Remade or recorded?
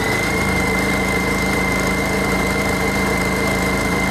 remade